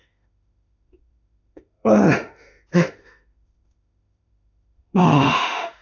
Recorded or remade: remade